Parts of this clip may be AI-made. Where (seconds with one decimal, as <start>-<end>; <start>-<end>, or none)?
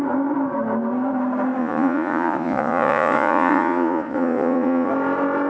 1.6-4.9